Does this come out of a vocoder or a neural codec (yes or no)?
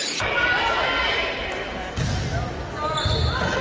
no